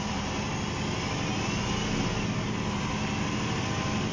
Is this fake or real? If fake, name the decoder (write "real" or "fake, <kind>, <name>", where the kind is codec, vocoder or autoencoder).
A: real